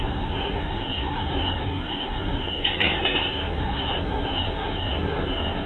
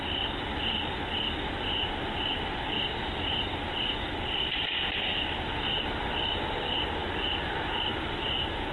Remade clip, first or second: first